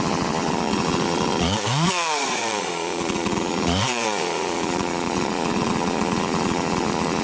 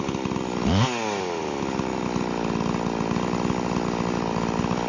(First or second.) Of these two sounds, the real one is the second